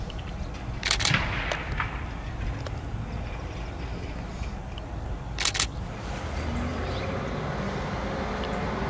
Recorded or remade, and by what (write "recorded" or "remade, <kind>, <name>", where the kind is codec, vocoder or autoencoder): recorded